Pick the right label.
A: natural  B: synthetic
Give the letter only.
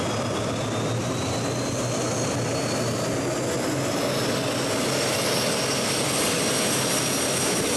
A